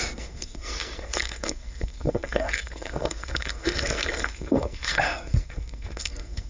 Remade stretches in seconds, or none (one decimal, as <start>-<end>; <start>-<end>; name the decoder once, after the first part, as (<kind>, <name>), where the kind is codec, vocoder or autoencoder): 0.0-6.5 (codec, SNAC)